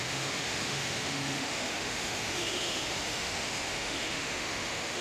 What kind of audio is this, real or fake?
fake